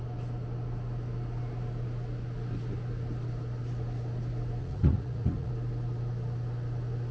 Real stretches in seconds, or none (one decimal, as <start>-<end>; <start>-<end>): 0.0-4.6; 5.5-7.1

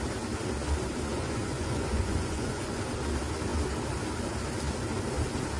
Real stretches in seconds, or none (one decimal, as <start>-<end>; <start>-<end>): 0.0-1.1; 2.8-5.6

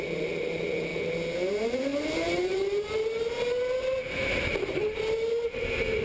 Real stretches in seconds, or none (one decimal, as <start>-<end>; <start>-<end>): 0.0-6.0

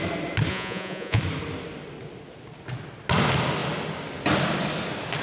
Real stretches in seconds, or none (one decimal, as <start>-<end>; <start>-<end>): 0.0-0.5; 1.2-5.2

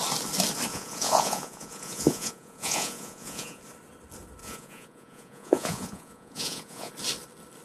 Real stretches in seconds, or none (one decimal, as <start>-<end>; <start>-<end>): 0.0-0.7; 3.6-4.4; 6.9-7.6